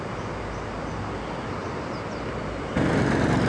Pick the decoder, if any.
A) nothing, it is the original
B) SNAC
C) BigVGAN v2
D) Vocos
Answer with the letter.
A